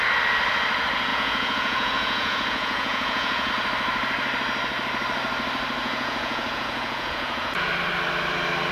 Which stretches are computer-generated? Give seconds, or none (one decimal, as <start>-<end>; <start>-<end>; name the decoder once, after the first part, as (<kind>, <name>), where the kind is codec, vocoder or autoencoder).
1.1-3.5 (vocoder, Vocos); 5.8-7.7